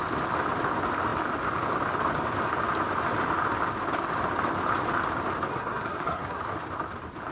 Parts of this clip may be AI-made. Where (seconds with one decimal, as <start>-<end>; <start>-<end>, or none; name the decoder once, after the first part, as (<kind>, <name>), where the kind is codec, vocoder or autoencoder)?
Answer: 5.5-6.4 (codec, SNAC)